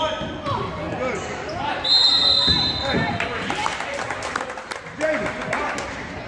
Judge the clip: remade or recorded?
recorded